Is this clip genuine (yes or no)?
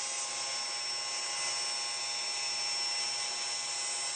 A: yes